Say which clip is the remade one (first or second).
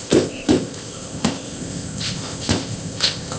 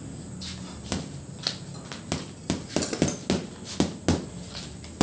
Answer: first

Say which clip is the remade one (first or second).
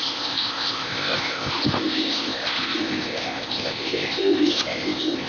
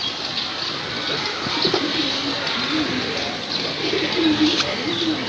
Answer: first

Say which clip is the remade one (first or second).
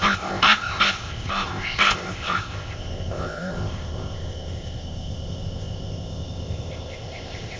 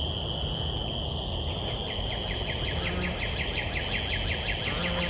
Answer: first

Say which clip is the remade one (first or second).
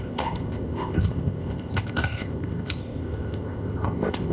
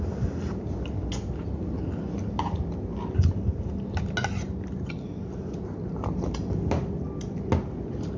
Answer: first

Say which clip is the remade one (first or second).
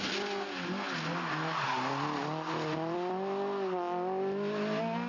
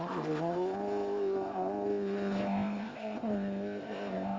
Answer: second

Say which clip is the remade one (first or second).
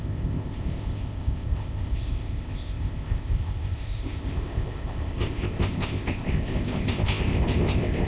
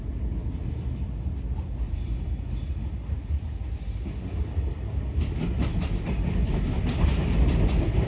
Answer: first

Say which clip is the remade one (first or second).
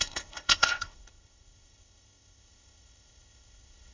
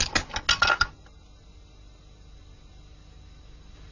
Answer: first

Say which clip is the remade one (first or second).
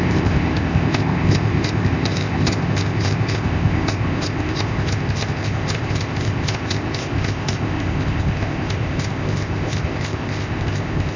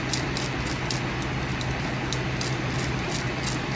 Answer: first